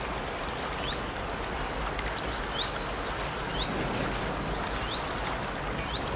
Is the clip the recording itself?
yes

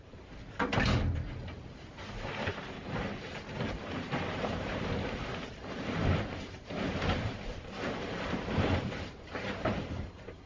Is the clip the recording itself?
no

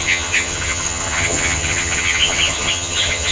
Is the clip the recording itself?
no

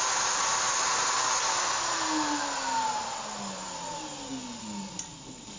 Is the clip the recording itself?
yes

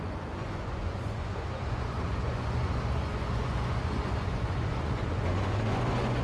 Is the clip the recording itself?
no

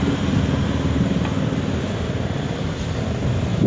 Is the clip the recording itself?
yes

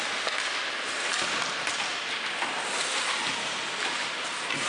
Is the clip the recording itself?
yes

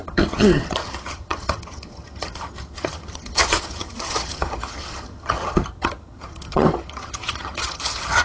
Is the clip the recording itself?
no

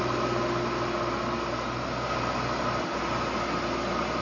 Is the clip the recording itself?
yes